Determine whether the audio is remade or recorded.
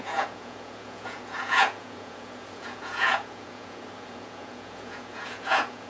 remade